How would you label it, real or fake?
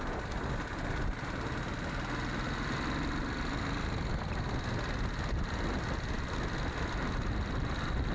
real